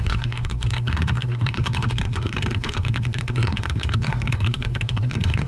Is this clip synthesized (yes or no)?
yes